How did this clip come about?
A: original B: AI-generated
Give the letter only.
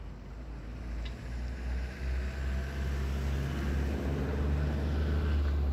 A